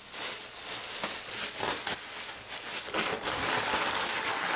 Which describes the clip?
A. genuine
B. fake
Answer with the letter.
A